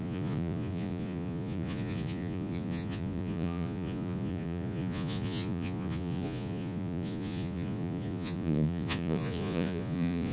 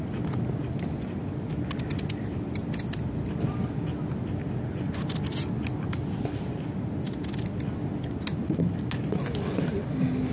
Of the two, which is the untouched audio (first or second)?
second